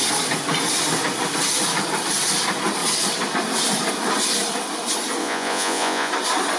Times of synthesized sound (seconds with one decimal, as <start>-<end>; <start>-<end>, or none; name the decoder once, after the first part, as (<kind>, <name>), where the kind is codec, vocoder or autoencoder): 5.2-6.1 (vocoder, Vocos)